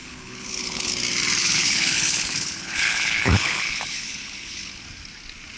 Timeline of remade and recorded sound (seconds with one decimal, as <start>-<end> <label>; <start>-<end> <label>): 0.0-0.9 remade; 0.9-1.4 recorded; 1.4-4.8 remade; 4.8-5.6 recorded

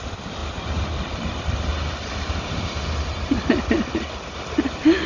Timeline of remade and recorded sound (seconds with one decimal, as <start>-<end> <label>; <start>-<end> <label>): 0.0-0.4 recorded; 0.4-0.9 remade; 0.9-1.7 recorded; 1.7-3.4 remade; 3.4-5.1 recorded